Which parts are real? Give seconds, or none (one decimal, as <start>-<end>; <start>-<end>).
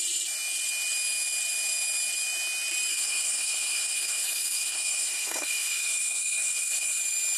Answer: 0.0-2.9; 7.0-7.4